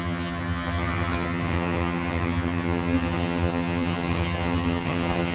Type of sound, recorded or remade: remade